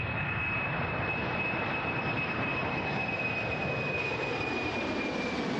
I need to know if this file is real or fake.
fake